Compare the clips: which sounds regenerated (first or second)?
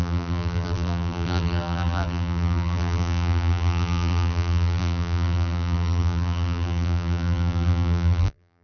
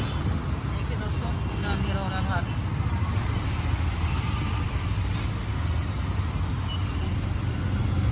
first